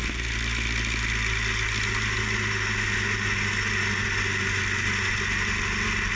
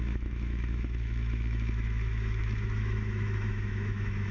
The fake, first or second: second